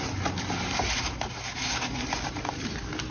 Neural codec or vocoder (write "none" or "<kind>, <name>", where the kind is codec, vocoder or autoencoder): none